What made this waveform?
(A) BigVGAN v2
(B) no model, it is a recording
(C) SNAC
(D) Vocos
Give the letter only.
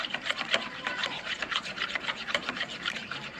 A